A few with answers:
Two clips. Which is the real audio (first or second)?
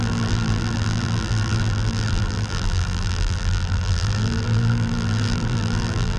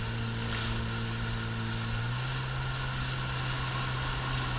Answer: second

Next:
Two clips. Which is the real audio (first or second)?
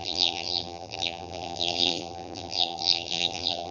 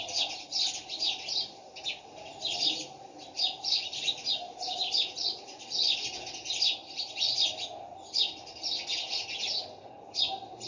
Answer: second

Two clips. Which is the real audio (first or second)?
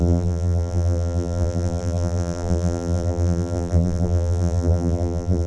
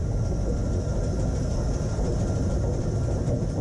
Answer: second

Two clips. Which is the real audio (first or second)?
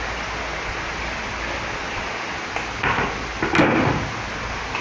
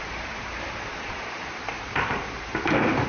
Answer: first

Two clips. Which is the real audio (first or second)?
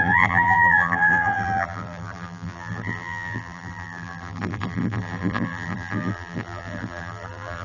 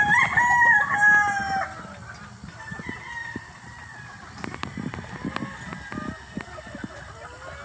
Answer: second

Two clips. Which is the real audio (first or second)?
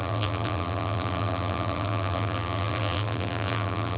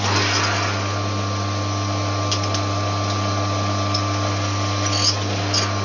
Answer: second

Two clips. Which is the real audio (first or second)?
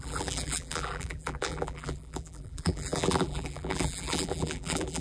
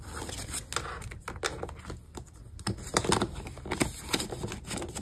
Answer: second